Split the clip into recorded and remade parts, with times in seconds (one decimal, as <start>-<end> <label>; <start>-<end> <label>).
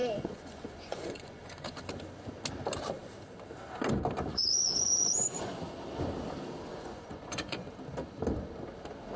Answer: 0.0-1.8 remade; 1.8-4.3 recorded; 4.3-5.5 remade; 5.5-6.7 recorded; 6.7-7.7 remade; 7.7-9.2 recorded